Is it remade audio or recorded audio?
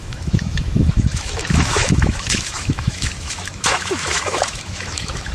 remade